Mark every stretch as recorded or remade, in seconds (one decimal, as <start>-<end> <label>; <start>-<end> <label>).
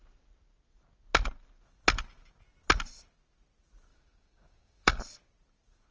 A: 0.0-3.9 recorded; 3.9-5.0 remade; 5.0-5.9 recorded